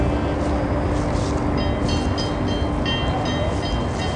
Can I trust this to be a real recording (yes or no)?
yes